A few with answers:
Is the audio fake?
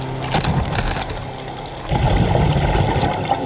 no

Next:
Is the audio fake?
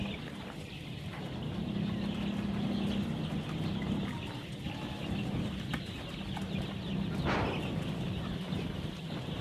no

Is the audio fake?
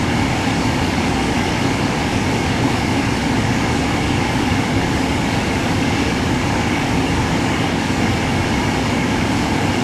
yes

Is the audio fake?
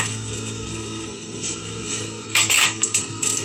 yes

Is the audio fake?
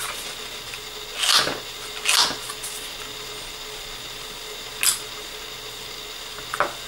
no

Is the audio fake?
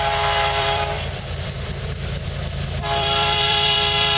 yes